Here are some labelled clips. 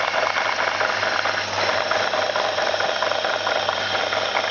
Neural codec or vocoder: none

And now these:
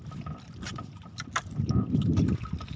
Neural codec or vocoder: none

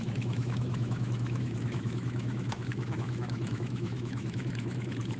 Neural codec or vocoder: autoencoder, DAC-VAE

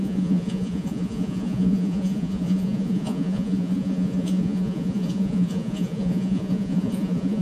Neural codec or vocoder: vocoder, Vocos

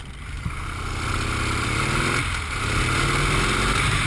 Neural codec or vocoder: none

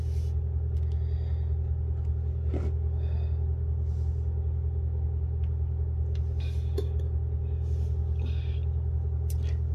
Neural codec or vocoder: none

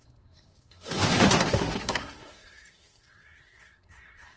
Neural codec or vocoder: codec, SNAC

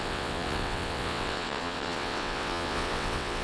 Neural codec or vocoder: vocoder, WaveNeXt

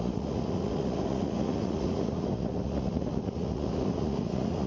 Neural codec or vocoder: vocoder, Vocos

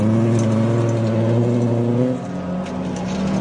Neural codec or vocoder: none